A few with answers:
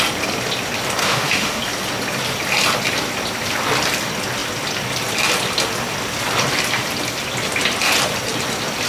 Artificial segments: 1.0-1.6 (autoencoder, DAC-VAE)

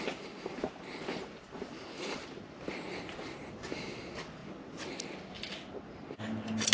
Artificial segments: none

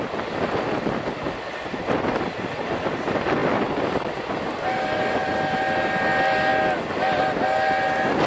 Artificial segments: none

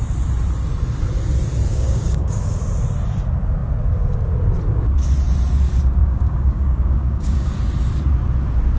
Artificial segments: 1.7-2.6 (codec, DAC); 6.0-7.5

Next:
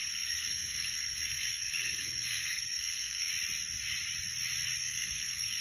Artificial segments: 0.0-3.3 (codec, SNAC); 4.8-5.6